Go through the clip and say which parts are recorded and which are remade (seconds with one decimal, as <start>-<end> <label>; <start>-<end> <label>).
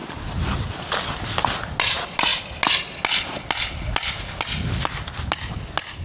0.0-6.0 recorded